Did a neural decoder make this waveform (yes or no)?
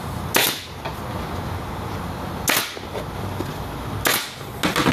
no